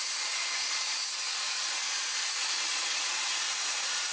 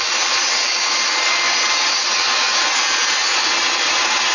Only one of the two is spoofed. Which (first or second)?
first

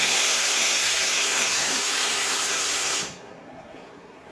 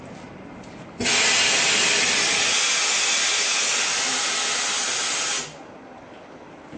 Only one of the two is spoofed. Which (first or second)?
first